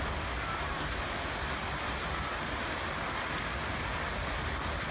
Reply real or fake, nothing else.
real